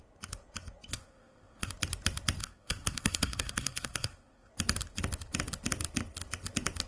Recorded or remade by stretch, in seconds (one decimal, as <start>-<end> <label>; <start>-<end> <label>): 0.0-0.9 recorded; 0.9-1.7 remade; 1.7-2.4 recorded; 2.4-4.5 remade; 4.5-6.9 recorded